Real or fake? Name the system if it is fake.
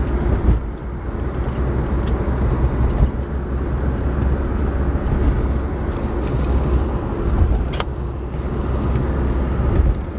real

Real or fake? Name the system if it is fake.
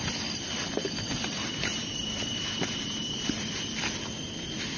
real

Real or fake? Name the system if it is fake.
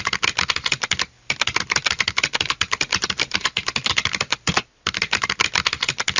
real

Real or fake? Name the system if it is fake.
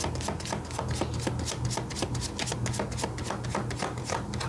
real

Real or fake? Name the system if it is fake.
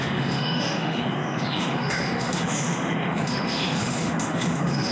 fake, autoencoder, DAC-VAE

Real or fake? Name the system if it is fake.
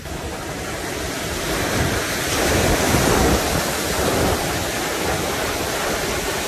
real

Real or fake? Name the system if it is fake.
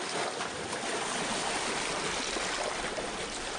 real